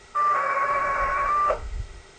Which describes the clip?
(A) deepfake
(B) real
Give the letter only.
A